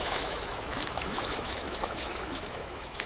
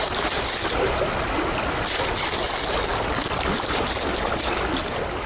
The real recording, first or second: second